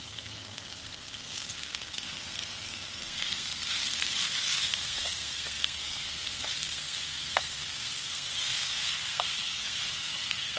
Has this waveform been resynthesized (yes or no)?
yes